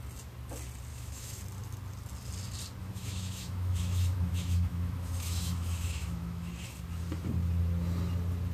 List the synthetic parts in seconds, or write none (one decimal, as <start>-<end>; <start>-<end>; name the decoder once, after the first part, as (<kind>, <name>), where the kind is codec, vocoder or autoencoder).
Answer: 0.9-1.4 (autoencoder, DAC-VAE); 2.8-6.5